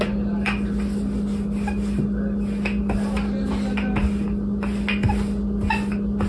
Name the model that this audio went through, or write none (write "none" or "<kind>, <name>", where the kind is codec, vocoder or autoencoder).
none